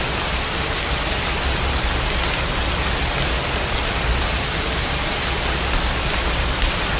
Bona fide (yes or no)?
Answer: yes